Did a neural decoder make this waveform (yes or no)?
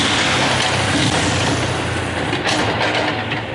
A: no